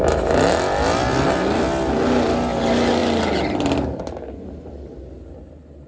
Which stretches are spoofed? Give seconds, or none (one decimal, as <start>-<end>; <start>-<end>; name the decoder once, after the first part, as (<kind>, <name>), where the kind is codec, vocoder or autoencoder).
none